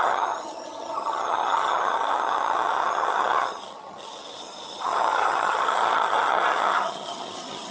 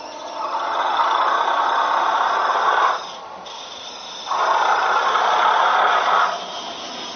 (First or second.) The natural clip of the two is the second